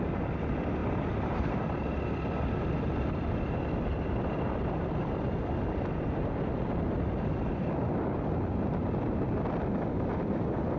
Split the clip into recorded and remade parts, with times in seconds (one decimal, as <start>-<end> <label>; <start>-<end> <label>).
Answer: 0.0-10.8 recorded